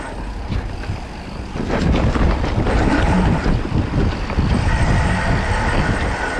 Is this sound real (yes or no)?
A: yes